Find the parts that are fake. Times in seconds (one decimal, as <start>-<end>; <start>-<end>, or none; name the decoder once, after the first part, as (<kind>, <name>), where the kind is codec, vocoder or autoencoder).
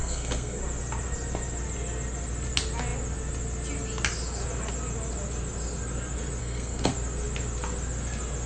0.0-0.6 (codec, SNAC); 6.4-6.9